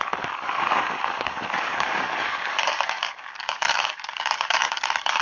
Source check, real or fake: fake